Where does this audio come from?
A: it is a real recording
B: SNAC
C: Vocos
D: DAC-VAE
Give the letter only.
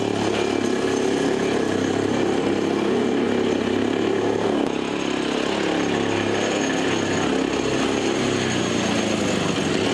A